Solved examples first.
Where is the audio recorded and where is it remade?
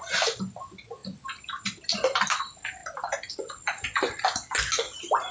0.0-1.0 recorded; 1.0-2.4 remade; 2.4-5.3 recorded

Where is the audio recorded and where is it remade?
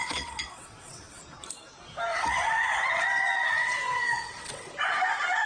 0.0-1.2 remade; 1.2-2.1 recorded; 2.1-4.7 remade; 4.7-5.5 recorded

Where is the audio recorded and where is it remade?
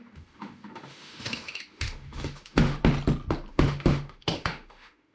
0.0-2.8 remade; 2.8-3.5 recorded; 3.5-5.1 remade